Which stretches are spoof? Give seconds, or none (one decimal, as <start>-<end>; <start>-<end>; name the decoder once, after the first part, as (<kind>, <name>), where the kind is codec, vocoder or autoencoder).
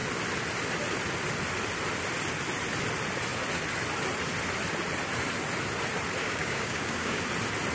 6.2-7.2 (codec, DAC)